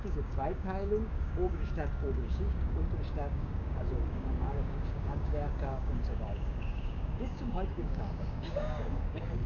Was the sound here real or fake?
fake